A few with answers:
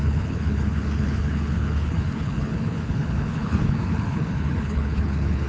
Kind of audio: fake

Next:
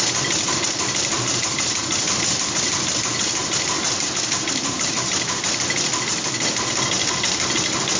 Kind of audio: real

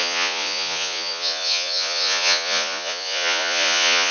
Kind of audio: fake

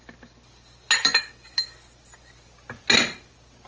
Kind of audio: real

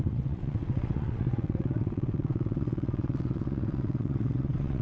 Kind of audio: fake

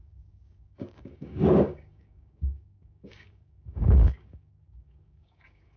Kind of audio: fake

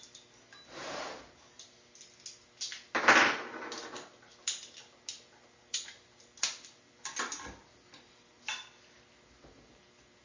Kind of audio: real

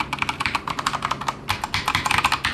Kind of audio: real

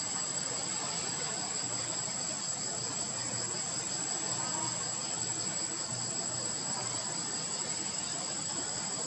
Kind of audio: real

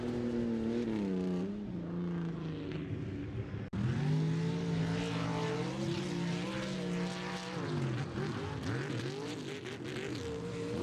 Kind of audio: real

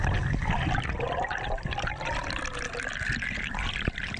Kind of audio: real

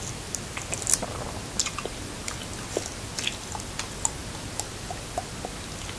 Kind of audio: real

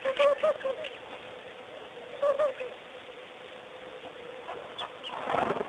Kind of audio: real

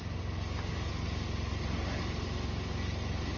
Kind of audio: real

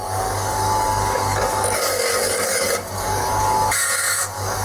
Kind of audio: fake